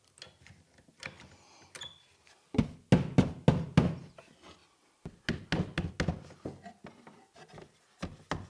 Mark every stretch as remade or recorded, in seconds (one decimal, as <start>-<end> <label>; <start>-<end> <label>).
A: 0.0-8.5 recorded